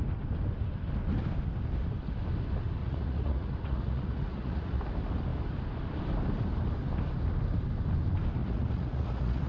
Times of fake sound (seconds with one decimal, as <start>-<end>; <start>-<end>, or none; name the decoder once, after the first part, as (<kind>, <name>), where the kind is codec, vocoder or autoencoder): 2.8-4.8 (vocoder, Vocos); 8.4-9.5